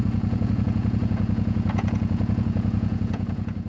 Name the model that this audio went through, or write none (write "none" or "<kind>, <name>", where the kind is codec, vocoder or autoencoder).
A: vocoder, Vocos